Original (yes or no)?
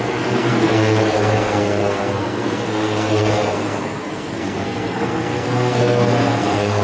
no